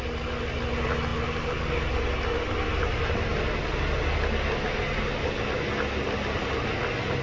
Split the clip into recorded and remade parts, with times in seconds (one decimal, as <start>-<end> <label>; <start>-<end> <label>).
0.0-7.2 recorded